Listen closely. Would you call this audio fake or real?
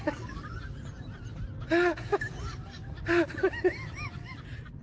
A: real